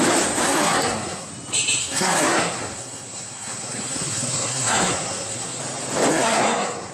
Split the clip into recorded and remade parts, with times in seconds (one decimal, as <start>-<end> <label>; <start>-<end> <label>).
0.0-0.4 recorded; 0.4-1.3 remade; 1.3-1.8 recorded; 1.8-5.6 remade; 5.6-6.1 recorded; 6.1-6.9 remade